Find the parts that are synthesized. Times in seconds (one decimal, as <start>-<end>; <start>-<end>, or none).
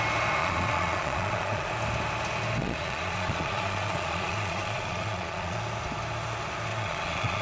0.4-1.7; 2.6-5.6; 6.7-7.4